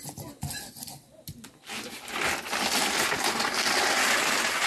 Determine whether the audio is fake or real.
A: real